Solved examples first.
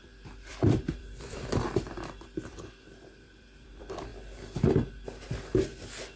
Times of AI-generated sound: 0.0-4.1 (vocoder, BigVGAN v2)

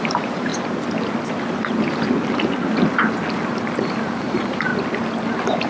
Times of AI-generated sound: 0.0-0.5 (vocoder, BigVGAN v2); 3.8-4.7

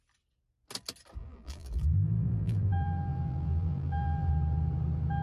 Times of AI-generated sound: 1.2-4.3 (vocoder, BigVGAN v2)

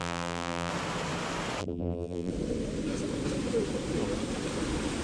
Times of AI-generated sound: 0.0-0.7 (vocoder, BigVGAN v2); 1.6-2.3

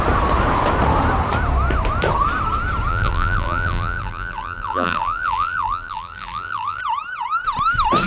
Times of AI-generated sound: 2.9-6.8 (vocoder, BigVGAN v2)

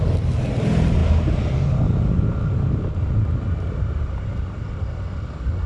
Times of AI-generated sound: none

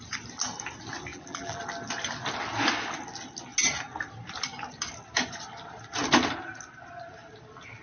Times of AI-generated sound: 1.1-1.6 (vocoder, BigVGAN v2)